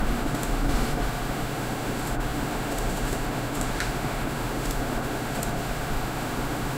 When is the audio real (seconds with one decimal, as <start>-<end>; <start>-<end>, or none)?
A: none